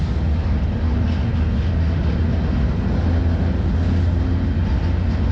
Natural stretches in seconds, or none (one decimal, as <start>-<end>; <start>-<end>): 0.0-5.3